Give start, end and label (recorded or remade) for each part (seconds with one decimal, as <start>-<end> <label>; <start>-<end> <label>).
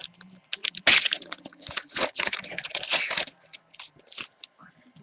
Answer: 0.0-0.6 recorded; 0.6-3.6 remade; 3.6-5.0 recorded